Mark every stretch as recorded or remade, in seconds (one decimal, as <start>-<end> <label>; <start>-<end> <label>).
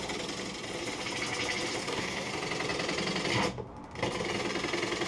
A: 0.0-1.8 recorded; 1.8-2.3 remade; 2.3-5.1 recorded